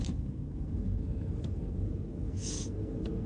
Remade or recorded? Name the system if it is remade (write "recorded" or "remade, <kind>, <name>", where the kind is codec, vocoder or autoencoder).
remade, codec, SNAC